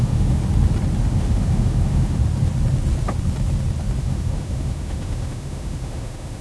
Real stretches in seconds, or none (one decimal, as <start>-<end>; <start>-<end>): 0.4-1.1; 2.2-4.0